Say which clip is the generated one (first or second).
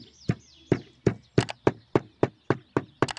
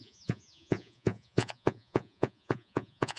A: second